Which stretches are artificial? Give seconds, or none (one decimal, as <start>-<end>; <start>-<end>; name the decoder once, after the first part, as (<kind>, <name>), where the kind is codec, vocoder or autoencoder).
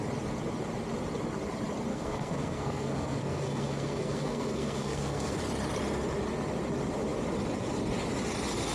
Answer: 1.9-5.4 (codec, SNAC)